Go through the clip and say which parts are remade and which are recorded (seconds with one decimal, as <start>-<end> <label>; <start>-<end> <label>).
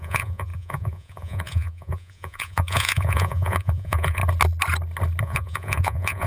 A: 0.0-4.2 remade; 4.2-5.2 recorded; 5.2-6.3 remade